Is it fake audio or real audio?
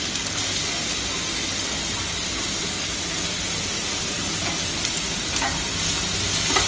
real